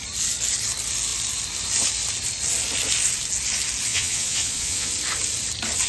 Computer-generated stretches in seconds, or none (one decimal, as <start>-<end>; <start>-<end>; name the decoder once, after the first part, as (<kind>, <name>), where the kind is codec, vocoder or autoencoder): 3.9-4.9 (vocoder, Vocos)